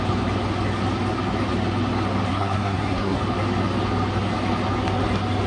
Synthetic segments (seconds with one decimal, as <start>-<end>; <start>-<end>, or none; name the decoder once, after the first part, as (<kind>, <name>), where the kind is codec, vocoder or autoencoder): 2.3-3.2 (codec, SNAC)